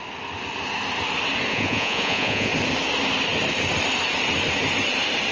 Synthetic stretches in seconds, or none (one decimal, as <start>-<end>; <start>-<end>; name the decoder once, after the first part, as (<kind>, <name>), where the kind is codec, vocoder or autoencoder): 1.5-2.5 (vocoder, Vocos)